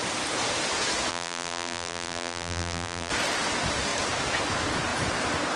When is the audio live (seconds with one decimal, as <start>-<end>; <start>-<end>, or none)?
0.0-1.1; 3.1-5.6